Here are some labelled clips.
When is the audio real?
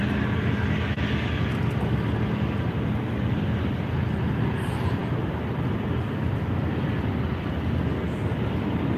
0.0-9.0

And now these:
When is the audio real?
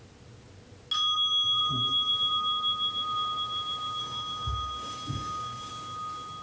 0.0-1.6; 2.1-4.0; 5.7-6.4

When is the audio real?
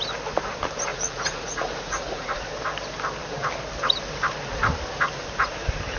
0.0-0.9; 2.4-6.0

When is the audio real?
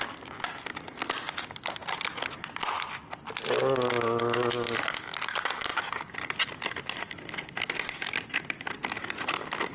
0.0-9.7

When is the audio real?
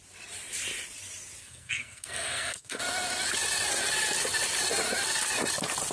0.0-1.4; 2.8-5.9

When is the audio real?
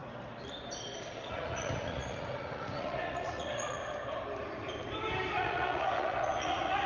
0.0-1.1; 3.8-5.4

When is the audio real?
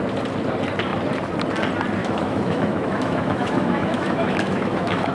0.0-2.0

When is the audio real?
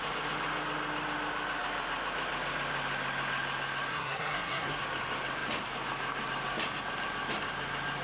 0.0-3.9; 4.8-8.0